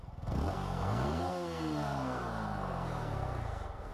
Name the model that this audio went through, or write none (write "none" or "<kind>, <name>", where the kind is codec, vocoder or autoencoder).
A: codec, SNAC